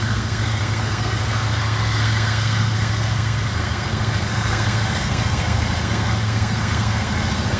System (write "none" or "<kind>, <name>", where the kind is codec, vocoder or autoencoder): codec, SNAC